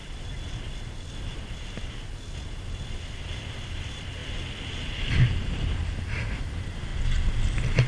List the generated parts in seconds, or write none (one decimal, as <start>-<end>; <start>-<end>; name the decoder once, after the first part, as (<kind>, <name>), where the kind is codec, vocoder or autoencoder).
3.6-4.2 (vocoder, BigVGAN v2); 5.1-5.8; 6.4-6.9